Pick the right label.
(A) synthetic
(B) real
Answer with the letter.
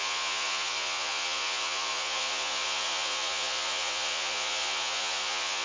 A